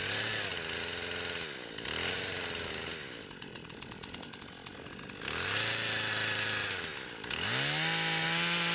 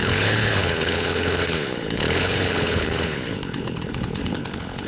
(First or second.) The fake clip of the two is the second